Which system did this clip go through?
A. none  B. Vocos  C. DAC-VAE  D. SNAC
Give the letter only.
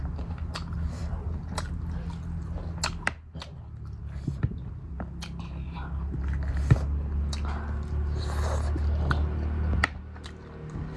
A